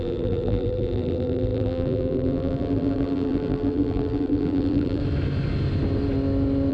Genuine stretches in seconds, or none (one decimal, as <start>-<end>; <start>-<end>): 5.0-6.7